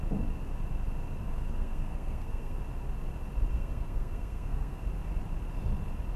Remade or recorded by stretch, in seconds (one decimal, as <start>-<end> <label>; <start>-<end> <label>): 0.0-1.2 recorded; 1.2-2.6 remade; 2.6-3.5 recorded; 3.5-4.8 remade; 4.8-6.2 recorded